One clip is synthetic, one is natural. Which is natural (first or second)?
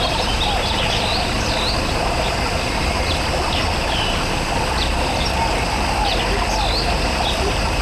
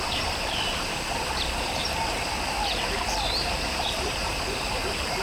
first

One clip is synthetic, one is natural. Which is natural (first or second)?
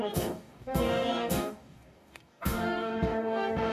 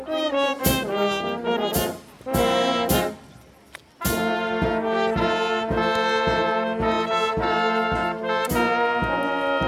second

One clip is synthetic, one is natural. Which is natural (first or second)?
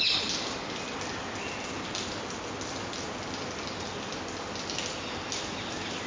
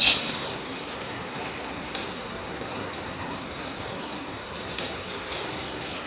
first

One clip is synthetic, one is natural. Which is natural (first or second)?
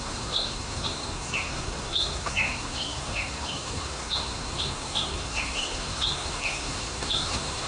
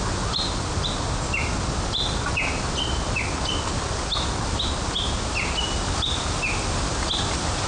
second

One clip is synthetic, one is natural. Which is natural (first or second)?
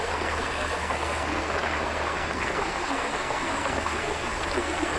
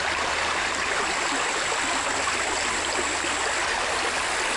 second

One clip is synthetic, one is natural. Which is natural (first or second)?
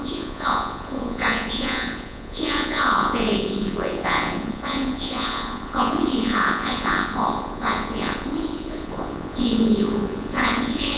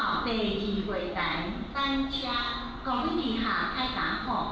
second